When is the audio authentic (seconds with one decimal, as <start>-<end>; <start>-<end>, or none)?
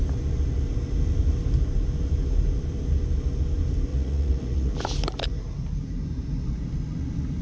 0.0-3.9; 4.7-7.4